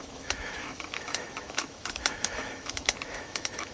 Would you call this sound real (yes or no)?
no